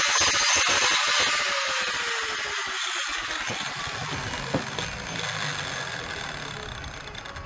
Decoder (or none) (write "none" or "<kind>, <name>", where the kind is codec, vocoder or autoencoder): none